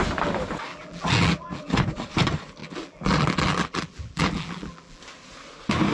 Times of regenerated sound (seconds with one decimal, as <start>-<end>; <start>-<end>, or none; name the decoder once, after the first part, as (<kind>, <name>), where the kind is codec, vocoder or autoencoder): 0.7-1.6 (vocoder, BigVGAN v2); 2.6-5.0